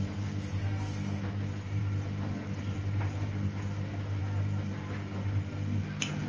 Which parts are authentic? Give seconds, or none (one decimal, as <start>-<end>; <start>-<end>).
0.0-6.3